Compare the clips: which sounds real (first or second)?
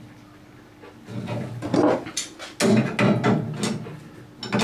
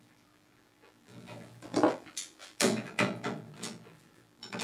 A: first